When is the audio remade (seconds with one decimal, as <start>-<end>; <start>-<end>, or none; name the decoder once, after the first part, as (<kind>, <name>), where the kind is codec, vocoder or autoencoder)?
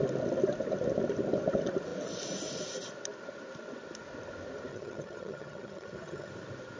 4.7-6.3 (vocoder, HiFi-GAN)